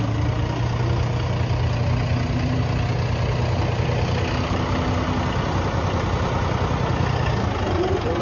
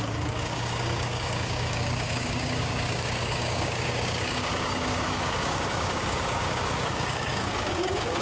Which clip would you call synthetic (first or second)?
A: second